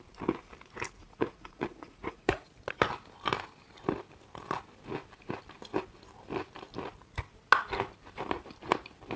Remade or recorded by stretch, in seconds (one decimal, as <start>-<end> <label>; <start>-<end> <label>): 0.0-1.0 recorded; 1.0-2.5 remade; 2.5-9.2 recorded